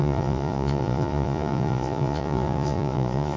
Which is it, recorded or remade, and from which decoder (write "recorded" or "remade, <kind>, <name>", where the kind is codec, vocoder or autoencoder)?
remade, vocoder, Vocos